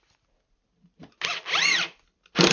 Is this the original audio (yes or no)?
no